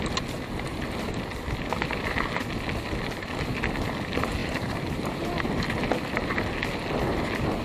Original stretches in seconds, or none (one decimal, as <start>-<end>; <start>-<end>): 0.0-4.4; 5.5-7.6